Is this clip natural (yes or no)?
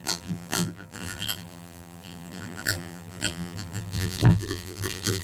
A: no